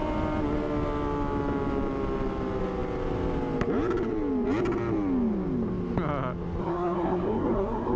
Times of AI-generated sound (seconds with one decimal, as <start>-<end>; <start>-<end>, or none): 6.6-8.0